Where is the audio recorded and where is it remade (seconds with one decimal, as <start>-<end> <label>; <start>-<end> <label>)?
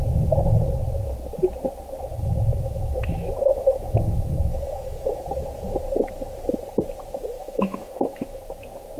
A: 0.0-2.1 recorded; 2.1-5.2 remade; 5.2-7.4 recorded; 7.4-8.4 remade; 8.4-9.0 recorded